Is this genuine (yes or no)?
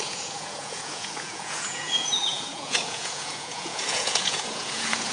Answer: no